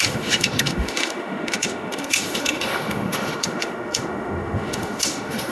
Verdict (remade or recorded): remade